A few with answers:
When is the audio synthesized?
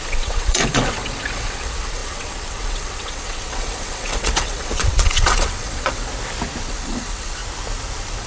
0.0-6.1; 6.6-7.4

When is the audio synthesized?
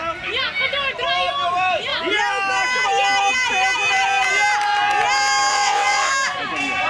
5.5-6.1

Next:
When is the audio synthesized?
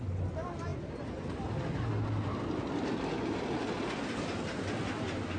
none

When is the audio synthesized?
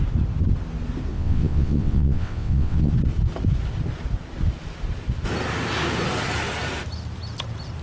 1.1-2.9